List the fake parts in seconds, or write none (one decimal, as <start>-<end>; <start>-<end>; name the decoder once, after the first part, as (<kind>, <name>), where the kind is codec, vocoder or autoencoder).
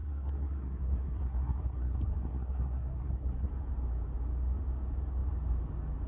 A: 0.0-3.5 (codec, SNAC)